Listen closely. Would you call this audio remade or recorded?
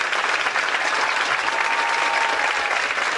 recorded